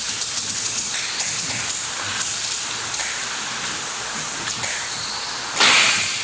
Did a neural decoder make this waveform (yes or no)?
no